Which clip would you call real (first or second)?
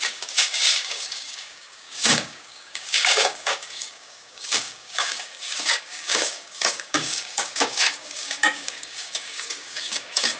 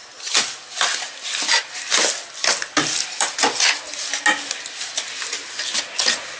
second